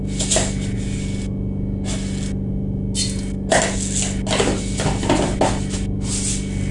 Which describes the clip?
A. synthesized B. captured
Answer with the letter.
B